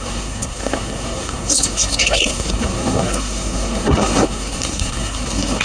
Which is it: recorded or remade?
remade